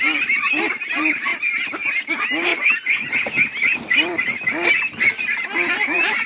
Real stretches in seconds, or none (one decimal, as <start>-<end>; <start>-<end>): 1.3-2.0; 2.5-5.7